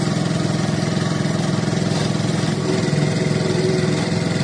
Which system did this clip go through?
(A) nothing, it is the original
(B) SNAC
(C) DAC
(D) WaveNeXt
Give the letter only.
A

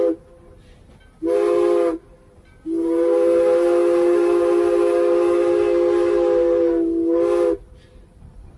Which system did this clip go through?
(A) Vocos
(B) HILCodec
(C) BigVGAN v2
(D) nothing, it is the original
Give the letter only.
D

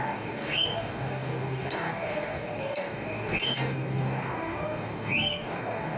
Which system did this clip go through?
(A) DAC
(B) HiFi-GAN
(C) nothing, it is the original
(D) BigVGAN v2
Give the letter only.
A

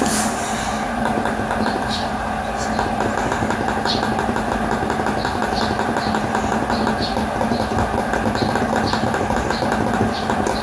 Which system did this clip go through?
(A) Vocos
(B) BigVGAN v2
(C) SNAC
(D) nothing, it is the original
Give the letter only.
D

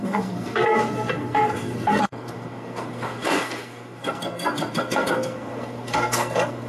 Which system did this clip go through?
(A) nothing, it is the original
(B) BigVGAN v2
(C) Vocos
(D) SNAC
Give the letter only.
D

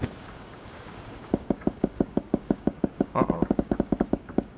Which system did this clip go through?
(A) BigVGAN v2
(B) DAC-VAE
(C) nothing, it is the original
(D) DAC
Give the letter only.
D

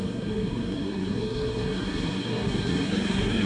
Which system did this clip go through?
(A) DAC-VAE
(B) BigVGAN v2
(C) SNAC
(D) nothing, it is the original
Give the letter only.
C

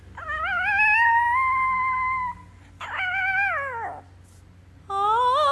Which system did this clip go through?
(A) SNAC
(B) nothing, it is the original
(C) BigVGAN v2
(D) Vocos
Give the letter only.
B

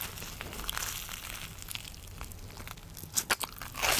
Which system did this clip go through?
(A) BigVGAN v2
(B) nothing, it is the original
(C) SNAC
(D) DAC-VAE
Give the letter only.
B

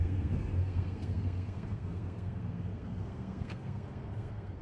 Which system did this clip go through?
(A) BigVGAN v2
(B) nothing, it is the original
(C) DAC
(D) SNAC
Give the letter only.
D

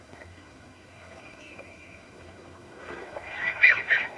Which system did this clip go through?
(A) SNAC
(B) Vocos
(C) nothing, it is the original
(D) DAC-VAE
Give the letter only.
A